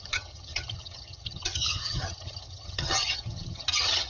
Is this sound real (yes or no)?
no